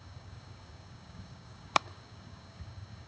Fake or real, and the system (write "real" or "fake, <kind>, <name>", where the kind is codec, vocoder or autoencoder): fake, codec, DAC